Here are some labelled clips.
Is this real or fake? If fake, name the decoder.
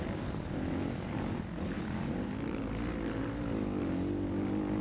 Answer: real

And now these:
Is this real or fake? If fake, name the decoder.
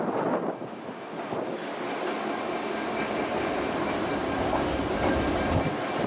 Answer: real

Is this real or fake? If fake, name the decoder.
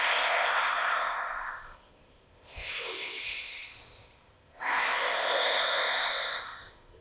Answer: fake, codec, ZipCodec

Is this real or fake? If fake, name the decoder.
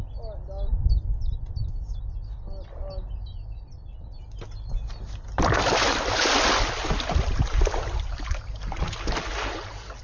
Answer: real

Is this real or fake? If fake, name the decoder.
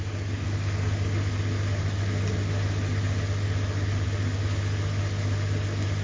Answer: real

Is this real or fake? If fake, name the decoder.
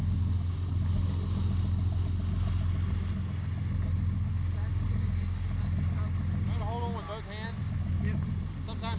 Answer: real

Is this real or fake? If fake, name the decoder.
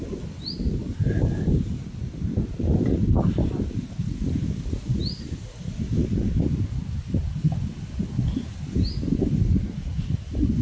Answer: real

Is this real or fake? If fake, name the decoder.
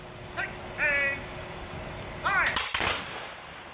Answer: real